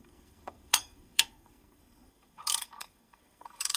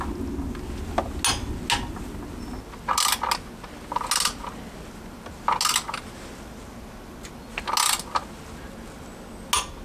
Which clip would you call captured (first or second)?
second